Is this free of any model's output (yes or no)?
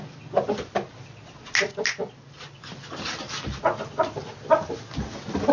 yes